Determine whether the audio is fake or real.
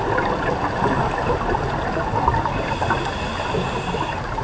real